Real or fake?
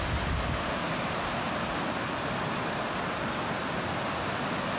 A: real